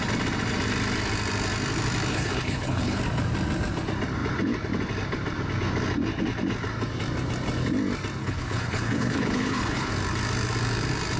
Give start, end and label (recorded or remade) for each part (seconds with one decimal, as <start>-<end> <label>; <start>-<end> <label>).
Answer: 0.0-2.1 recorded; 2.1-3.0 remade; 3.0-8.2 recorded; 8.2-9.9 remade; 9.9-11.2 recorded

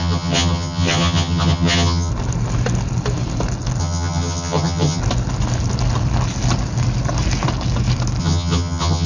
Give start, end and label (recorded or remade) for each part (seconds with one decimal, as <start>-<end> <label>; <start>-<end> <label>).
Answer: 0.0-2.1 remade; 2.1-3.8 recorded; 3.8-5.0 remade; 5.0-8.2 recorded; 8.2-9.1 remade